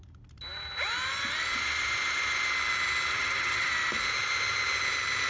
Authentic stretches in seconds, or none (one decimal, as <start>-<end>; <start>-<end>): 0.0-3.1; 3.7-5.3